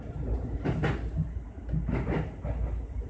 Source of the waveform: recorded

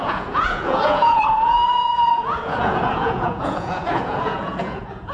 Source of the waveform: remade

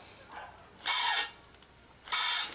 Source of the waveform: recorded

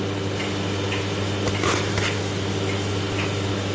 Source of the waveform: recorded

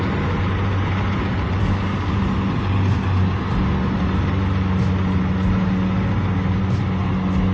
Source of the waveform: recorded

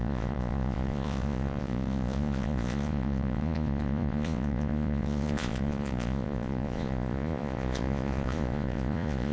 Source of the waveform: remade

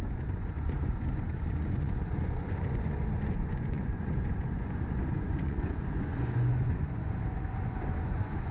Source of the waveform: remade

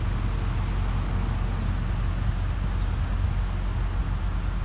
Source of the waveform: recorded